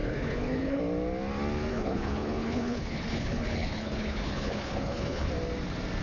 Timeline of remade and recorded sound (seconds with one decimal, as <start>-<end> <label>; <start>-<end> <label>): 0.0-0.8 remade; 0.8-1.7 recorded; 1.7-5.3 remade; 5.3-6.0 recorded